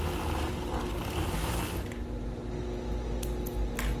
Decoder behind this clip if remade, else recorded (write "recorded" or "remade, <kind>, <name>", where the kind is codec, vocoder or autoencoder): recorded